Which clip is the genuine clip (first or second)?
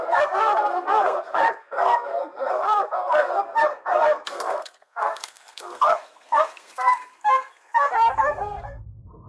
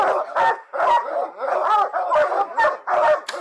second